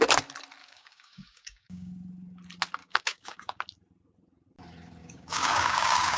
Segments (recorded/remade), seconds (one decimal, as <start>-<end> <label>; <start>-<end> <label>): 0.0-0.6 recorded; 0.6-1.9 remade; 1.9-2.8 recorded; 2.8-3.6 remade; 3.6-5.0 recorded; 5.0-6.2 remade